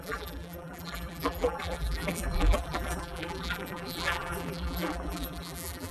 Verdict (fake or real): fake